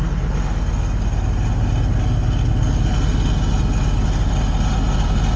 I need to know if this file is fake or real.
real